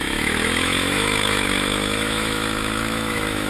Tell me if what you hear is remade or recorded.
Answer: remade